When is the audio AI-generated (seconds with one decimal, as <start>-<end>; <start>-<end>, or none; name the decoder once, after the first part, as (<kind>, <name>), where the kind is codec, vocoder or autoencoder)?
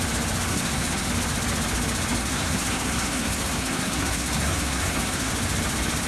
0.5-1.1 (codec, SNAC); 2.2-5.3